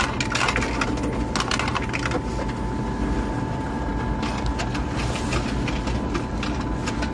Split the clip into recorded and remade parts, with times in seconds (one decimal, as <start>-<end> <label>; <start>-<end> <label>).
0.0-7.1 recorded